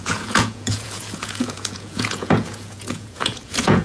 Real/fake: fake